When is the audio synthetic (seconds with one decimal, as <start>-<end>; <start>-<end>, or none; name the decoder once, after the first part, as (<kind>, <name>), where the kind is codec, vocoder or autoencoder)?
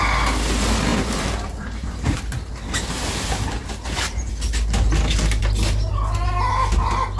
0.9-4.3 (vocoder, BigVGAN v2)